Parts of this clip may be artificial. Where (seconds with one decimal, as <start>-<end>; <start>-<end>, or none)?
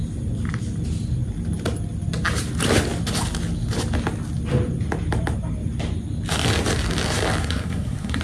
7.4-8.2